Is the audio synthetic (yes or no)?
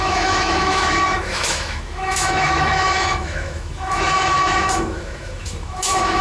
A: yes